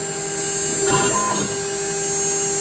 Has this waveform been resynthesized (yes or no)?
no